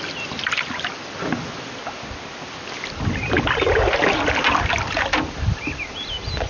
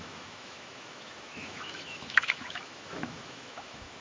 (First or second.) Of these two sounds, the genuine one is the first